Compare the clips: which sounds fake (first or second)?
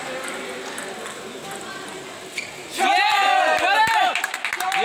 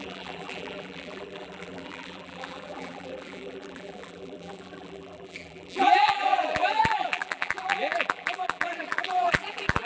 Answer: second